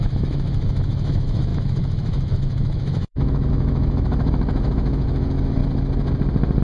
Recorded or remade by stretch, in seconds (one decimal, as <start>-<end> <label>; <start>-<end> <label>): 0.0-5.6 remade; 5.6-6.6 recorded